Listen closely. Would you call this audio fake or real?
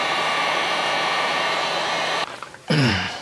fake